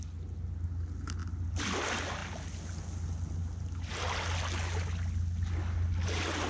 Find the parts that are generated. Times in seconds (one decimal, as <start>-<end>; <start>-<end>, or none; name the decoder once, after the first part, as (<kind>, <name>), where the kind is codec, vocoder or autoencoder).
1.2-1.8 (vocoder, BigVGAN v2)